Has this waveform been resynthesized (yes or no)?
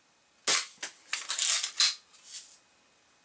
no